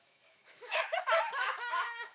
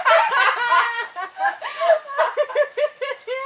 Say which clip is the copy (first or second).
first